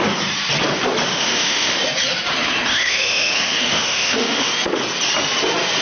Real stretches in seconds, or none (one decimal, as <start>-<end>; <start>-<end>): 0.0-1.1; 1.8-2.7; 4.5-5.8